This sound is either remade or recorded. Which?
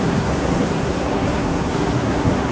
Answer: remade